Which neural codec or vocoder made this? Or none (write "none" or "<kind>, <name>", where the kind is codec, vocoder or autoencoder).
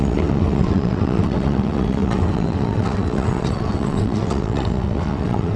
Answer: vocoder, WaveNeXt